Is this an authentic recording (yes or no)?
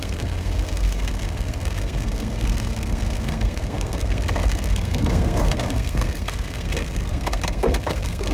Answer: no